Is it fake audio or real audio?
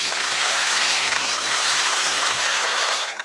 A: fake